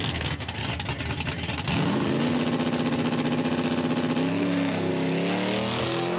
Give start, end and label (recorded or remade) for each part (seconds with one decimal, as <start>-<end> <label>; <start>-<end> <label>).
0.0-0.6 remade; 0.6-4.3 recorded; 4.3-4.9 remade; 4.9-5.8 recorded; 5.8-6.2 remade